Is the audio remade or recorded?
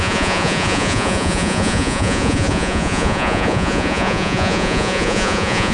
remade